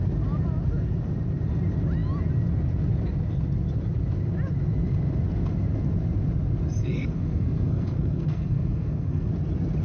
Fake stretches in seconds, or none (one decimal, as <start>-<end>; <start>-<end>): 6.8-9.3